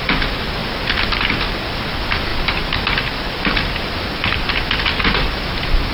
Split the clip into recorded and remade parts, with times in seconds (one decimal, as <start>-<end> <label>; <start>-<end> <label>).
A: 0.0-2.3 recorded; 2.3-5.9 remade